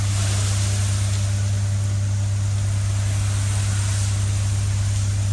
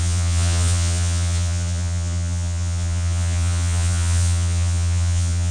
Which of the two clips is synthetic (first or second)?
second